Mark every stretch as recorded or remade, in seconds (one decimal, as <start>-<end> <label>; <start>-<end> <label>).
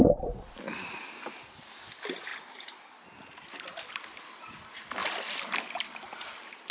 0.0-5.0 recorded; 5.0-6.1 remade; 6.1-6.7 recorded